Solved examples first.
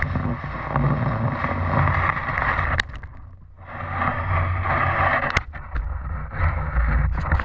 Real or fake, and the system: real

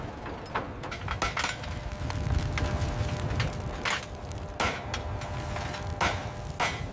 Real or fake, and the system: real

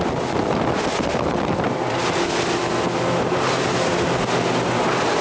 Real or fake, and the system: real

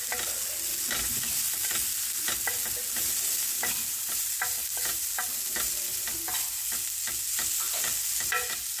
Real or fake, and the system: real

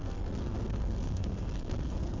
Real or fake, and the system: fake, codec, SNAC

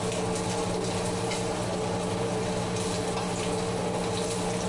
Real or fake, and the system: real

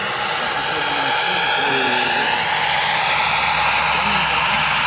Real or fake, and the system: real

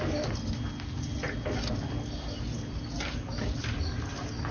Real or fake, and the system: real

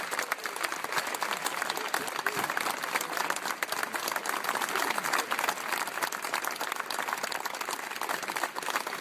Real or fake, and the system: real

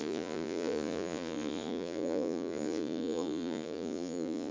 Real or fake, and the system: fake, vocoder, Vocos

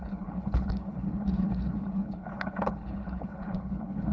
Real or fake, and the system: fake, codec, HILCodec